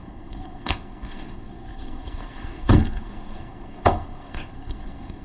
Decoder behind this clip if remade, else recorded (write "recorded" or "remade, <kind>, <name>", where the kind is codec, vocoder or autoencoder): remade, codec, SNAC